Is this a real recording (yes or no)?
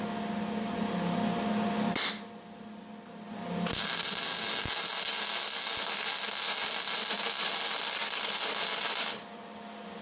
yes